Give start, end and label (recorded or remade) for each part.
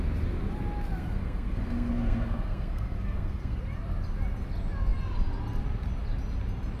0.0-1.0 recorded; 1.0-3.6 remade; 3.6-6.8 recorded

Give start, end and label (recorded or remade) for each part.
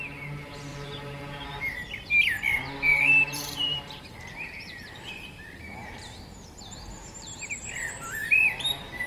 0.0-0.7 recorded; 0.7-1.6 remade; 1.6-2.9 recorded; 2.9-7.6 remade; 7.6-8.2 recorded; 8.2-9.1 remade